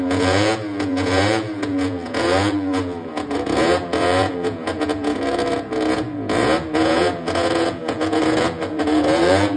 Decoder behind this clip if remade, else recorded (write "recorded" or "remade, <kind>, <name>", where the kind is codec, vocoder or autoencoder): remade, vocoder, Vocos